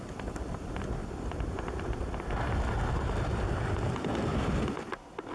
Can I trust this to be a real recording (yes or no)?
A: yes